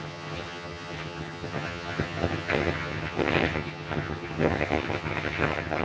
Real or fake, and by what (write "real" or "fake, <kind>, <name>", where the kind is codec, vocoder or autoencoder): fake, vocoder, HiFi-GAN